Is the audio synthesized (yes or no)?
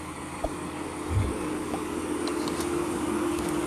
yes